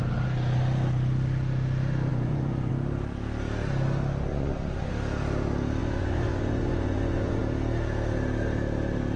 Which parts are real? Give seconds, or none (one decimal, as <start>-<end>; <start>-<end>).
0.0-2.1; 2.7-4.3; 4.9-5.8; 7.4-9.2